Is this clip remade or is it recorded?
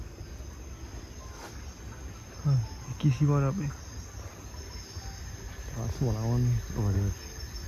recorded